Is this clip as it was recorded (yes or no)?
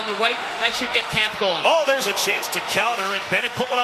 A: no